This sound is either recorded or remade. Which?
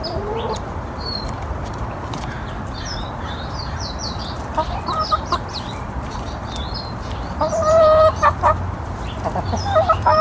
remade